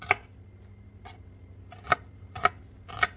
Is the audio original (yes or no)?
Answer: yes